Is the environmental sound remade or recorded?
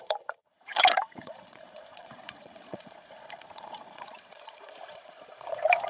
remade